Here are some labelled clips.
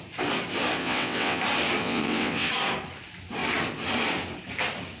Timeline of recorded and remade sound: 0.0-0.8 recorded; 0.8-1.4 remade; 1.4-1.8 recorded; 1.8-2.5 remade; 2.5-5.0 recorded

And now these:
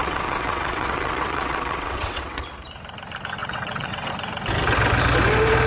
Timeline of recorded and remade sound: 0.0-2.5 remade; 2.5-3.4 recorded; 3.4-4.1 remade; 4.1-5.7 recorded

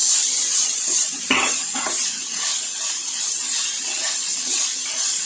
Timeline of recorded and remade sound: 0.0-3.2 remade; 3.2-3.8 recorded; 3.8-5.3 remade

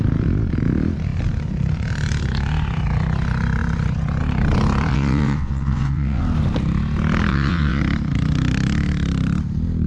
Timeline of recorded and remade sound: 0.0-4.9 recorded; 4.9-6.2 remade; 6.2-7.3 recorded; 7.3-7.8 remade; 7.8-9.9 recorded

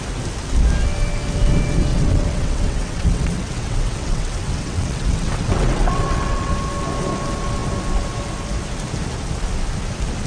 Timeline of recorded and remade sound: 0.0-1.9 recorded; 1.9-6.5 remade; 6.5-10.3 recorded

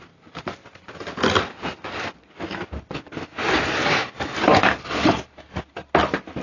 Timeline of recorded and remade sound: 0.0-6.4 recorded